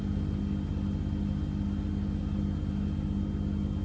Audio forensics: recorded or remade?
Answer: recorded